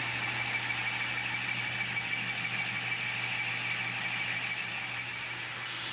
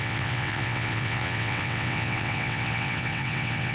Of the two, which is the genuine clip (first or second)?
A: first